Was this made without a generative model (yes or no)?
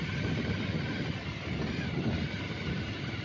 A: yes